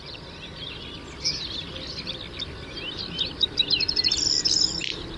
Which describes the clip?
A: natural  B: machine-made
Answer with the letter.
A